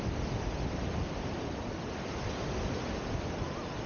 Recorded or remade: recorded